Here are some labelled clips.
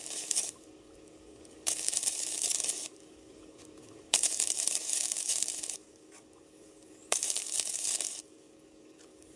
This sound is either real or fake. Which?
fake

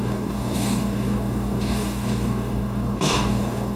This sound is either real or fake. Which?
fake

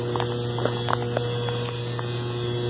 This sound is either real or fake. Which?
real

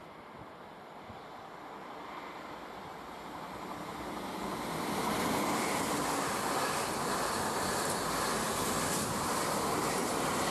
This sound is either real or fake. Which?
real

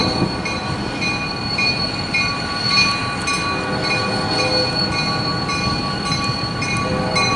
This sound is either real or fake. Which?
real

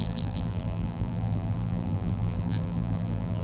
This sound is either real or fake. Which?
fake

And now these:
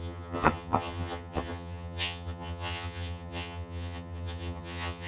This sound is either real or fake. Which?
fake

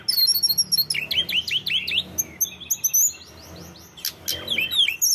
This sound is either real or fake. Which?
real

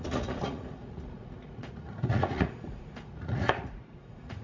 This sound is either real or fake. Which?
fake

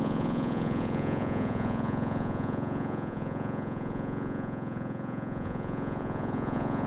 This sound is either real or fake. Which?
fake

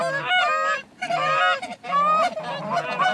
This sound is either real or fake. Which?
real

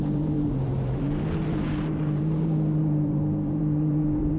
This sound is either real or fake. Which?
fake